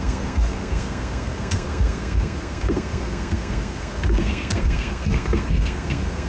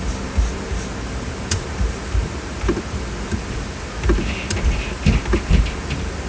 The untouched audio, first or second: second